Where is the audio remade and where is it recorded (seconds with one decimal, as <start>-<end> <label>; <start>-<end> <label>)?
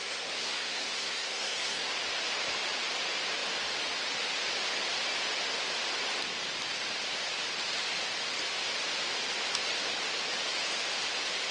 0.0-1.9 remade; 1.9-11.5 recorded